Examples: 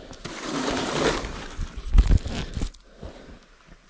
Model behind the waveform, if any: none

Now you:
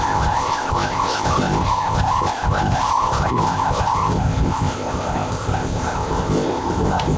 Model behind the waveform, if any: codec, ZipCodec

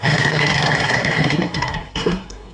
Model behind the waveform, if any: codec, SNAC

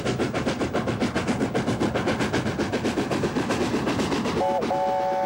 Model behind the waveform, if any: none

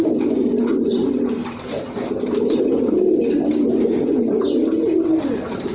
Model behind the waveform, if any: none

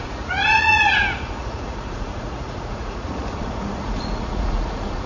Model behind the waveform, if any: vocoder, Vocos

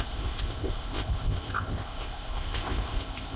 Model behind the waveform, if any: codec, ZipCodec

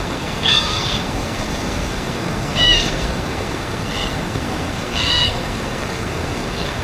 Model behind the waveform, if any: codec, SNAC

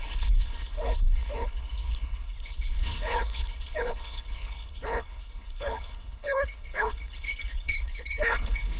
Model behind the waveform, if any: codec, HILCodec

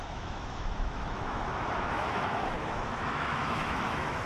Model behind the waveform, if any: autoencoder, DAC-VAE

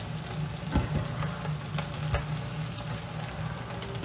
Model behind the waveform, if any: none